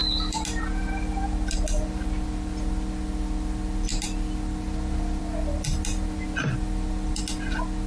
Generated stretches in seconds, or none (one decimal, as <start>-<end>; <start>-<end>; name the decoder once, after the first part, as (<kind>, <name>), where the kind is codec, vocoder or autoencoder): none